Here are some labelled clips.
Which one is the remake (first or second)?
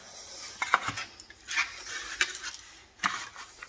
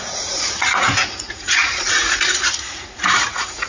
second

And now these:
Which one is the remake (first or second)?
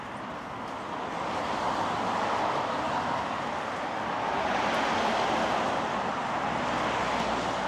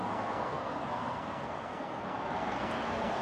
second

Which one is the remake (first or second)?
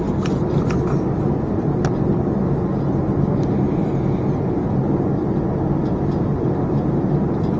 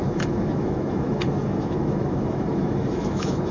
second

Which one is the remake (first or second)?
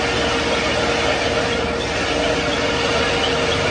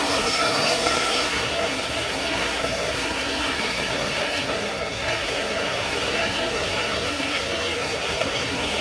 second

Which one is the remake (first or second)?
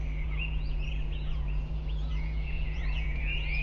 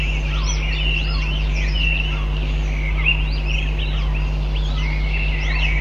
first